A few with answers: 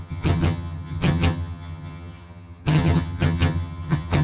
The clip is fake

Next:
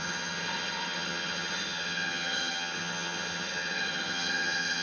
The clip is fake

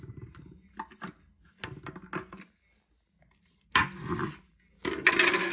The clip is real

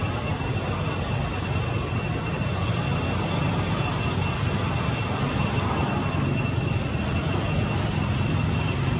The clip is real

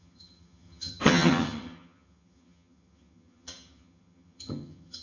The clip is fake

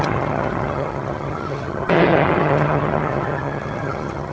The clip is fake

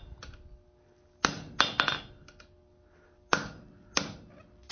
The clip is real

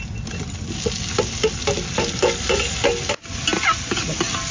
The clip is real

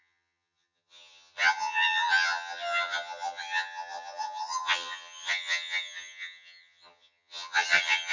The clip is fake